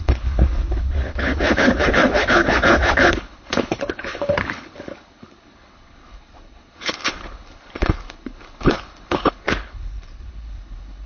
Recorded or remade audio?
remade